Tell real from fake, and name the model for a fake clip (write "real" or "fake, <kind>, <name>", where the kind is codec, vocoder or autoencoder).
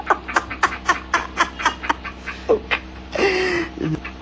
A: real